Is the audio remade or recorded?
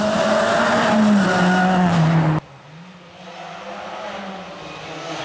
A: recorded